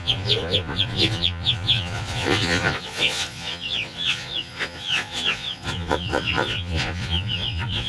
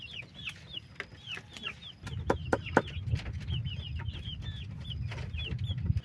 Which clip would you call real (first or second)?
second